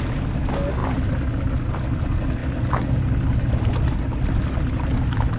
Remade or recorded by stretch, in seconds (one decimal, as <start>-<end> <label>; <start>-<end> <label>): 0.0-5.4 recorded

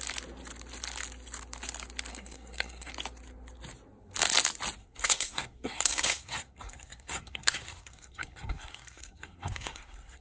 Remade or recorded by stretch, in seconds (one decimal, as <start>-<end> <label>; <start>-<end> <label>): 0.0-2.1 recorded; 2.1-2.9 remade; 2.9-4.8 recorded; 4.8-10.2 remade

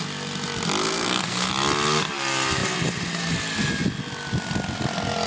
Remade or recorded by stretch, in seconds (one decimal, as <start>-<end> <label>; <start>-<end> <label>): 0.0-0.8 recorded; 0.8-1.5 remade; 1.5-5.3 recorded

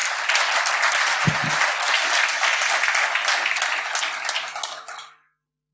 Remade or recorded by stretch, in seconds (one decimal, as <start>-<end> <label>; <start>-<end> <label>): 0.0-5.7 recorded

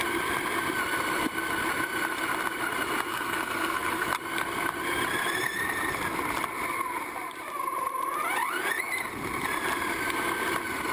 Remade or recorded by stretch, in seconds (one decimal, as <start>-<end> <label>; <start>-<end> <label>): 0.0-3.1 recorded; 3.1-4.1 remade; 4.1-10.9 recorded